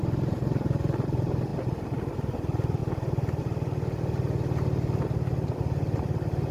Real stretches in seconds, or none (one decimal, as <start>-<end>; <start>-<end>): 0.0-2.8; 3.4-6.5